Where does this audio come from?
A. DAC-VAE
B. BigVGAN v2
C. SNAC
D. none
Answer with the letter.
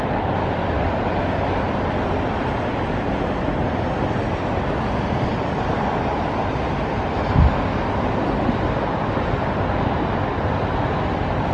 D